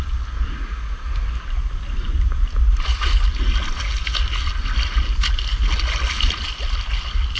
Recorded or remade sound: recorded